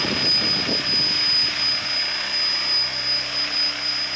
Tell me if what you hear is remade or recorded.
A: recorded